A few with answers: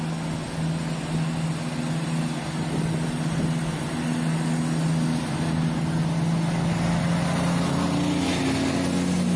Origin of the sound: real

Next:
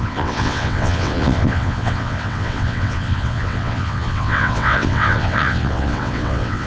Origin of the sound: fake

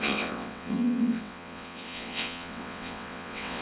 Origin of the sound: fake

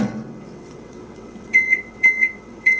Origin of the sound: fake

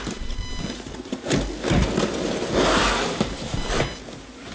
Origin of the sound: real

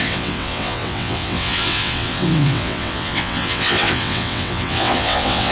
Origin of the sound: fake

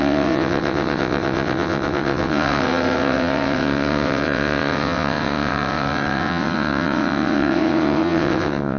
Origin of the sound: fake